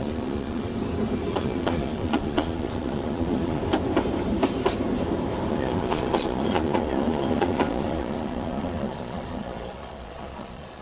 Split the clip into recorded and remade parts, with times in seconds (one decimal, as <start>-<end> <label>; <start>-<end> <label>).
0.0-0.7 remade; 0.7-1.3 recorded; 1.3-3.6 remade; 3.6-5.5 recorded; 5.5-10.8 remade